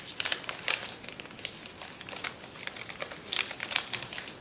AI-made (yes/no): no